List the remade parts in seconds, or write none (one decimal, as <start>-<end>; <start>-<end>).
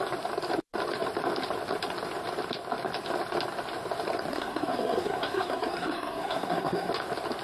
4.3-6.9